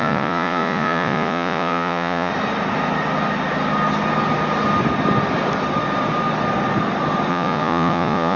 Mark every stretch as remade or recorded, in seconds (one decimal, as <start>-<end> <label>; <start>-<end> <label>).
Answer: 0.0-2.3 remade; 2.3-7.3 recorded; 7.3-8.4 remade